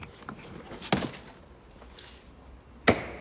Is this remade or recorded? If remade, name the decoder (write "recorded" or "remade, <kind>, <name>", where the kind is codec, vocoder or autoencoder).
recorded